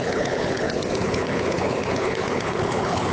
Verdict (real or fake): fake